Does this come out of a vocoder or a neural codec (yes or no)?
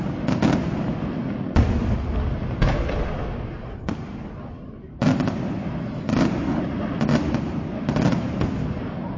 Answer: no